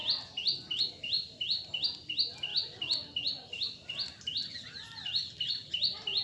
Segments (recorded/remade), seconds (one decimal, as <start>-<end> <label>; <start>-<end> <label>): 0.0-6.2 recorded